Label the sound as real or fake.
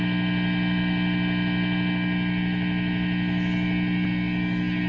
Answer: real